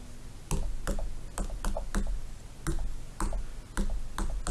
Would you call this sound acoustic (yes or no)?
yes